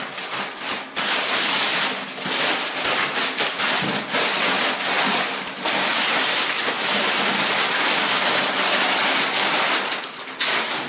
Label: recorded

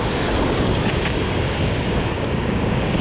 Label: remade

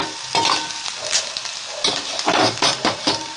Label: recorded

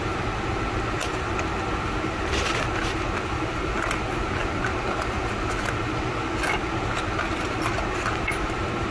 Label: recorded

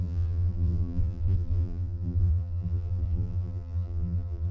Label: remade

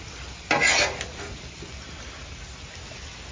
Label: recorded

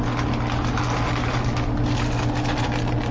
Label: recorded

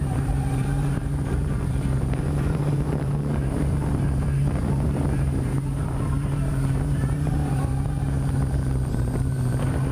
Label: remade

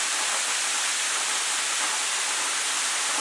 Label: recorded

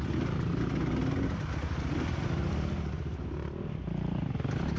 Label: recorded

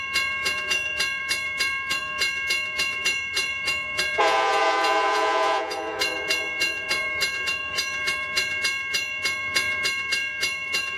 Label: remade